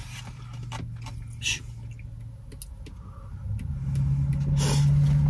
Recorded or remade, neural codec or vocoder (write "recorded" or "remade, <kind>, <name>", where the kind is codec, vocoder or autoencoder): recorded